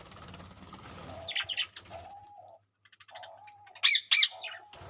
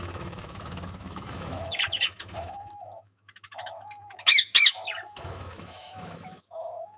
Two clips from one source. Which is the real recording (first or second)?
first